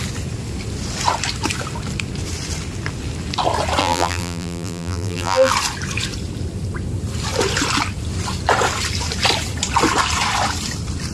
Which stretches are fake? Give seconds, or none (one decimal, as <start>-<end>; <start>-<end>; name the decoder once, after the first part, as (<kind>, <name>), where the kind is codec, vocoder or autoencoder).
3.8-5.5 (vocoder, BigVGAN v2)